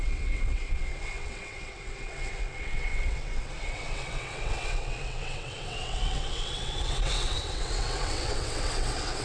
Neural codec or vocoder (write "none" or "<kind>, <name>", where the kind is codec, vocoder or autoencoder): vocoder, WaveNeXt